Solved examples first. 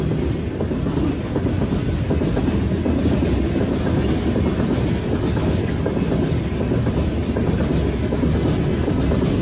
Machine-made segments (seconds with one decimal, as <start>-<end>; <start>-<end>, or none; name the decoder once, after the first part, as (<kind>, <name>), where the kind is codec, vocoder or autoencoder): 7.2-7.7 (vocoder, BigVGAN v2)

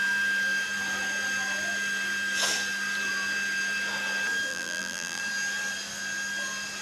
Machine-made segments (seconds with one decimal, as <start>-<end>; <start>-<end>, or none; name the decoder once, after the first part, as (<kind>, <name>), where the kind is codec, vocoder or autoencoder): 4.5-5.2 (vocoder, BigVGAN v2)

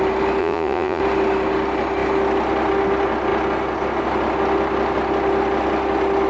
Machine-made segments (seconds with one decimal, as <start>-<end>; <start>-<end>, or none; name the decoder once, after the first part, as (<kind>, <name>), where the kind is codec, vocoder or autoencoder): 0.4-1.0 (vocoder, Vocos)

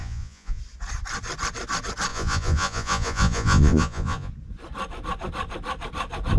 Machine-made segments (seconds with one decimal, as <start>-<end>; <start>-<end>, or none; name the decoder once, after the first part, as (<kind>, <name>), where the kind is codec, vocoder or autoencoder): 0.0-0.6 (vocoder, Vocos); 2.1-4.3